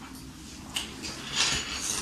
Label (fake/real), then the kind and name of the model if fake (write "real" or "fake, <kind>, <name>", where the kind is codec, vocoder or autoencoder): real